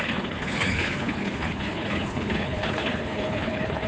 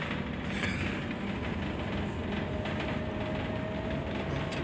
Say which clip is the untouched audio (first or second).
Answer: second